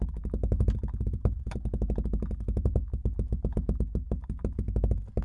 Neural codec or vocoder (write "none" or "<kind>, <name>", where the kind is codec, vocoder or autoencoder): none